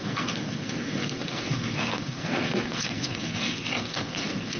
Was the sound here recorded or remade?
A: remade